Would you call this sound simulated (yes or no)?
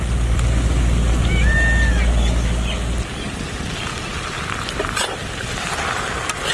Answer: no